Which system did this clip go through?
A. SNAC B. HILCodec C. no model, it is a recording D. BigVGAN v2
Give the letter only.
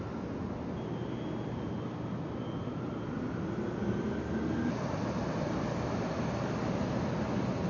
C